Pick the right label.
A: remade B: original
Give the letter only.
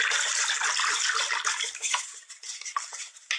B